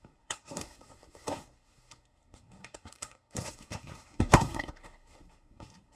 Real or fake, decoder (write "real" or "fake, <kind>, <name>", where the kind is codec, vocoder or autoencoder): fake, codec, SNAC